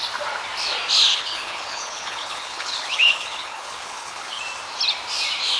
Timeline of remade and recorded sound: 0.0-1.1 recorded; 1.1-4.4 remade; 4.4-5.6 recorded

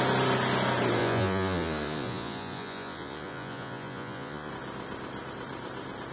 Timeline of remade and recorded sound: 0.0-1.0 recorded; 1.0-4.5 remade; 4.5-6.1 recorded

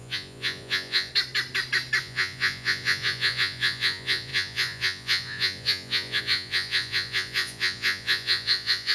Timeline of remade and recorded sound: 0.0-1.1 remade; 1.1-2.0 recorded; 2.0-8.9 remade